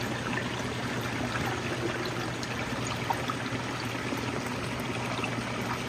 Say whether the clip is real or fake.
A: real